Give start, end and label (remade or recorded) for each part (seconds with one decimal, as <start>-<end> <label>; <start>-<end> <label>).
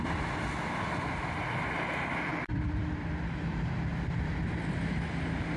0.0-2.3 recorded; 2.3-4.4 remade; 4.4-5.6 recorded